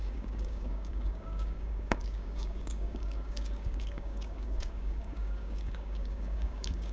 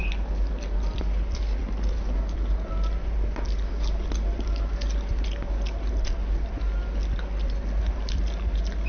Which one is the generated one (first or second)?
first